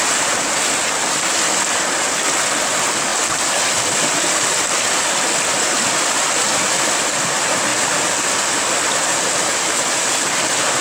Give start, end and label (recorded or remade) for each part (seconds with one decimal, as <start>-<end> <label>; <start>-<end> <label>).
0.0-10.8 recorded